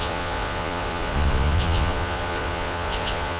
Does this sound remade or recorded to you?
remade